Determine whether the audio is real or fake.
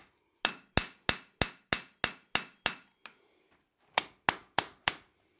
real